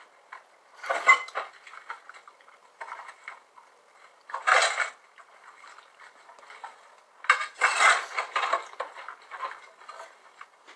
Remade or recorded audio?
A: recorded